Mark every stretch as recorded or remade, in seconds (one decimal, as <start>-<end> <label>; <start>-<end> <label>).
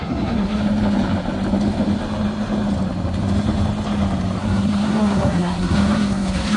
0.0-0.6 remade; 0.6-4.4 recorded; 4.4-6.6 remade